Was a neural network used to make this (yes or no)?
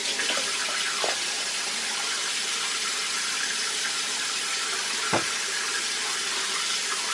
no